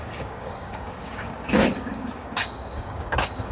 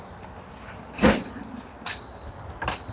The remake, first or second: first